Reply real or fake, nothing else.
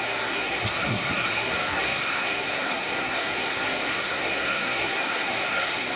fake